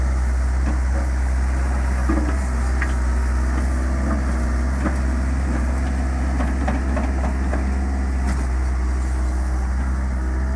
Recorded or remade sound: recorded